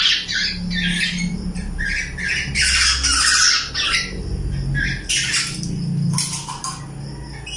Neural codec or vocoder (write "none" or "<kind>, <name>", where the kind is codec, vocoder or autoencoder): none